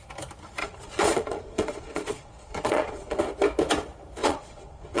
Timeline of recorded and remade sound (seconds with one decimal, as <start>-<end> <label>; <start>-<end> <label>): 0.0-0.6 recorded; 0.6-3.2 remade; 3.2-4.2 recorded; 4.2-5.0 remade